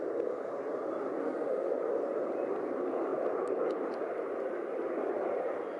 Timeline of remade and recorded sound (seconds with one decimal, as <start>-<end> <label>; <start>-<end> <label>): 0.0-1.2 recorded; 1.2-1.7 remade; 1.7-5.8 recorded